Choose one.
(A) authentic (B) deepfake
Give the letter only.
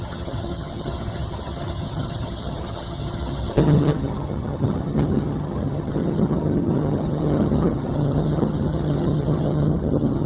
B